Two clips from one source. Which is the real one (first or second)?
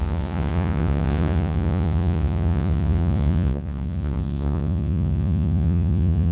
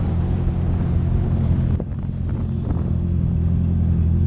second